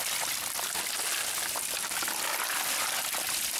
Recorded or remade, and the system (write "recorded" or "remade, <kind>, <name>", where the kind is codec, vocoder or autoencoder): recorded